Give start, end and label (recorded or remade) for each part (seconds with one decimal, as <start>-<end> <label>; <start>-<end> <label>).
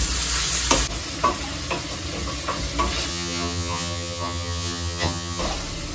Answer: 0.0-3.1 recorded; 3.1-5.4 remade; 5.4-5.9 recorded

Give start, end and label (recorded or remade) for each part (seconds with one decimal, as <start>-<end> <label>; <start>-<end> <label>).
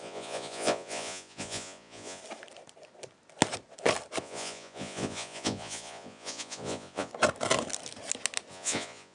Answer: 0.0-2.2 remade; 2.2-4.2 recorded; 4.2-7.1 remade; 7.1-8.5 recorded; 8.5-9.1 remade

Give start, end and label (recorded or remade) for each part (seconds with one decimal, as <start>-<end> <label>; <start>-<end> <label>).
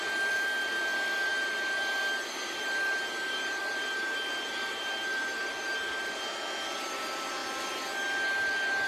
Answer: 0.0-8.9 recorded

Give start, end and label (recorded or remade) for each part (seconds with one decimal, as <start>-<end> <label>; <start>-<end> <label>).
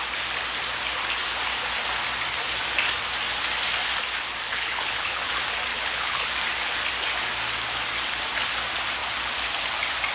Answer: 0.0-4.5 recorded; 4.5-5.3 remade; 5.3-5.7 recorded; 5.7-6.3 remade; 6.3-10.1 recorded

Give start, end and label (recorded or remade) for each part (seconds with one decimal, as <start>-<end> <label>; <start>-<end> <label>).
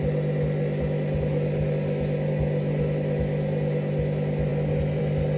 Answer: 0.0-5.4 recorded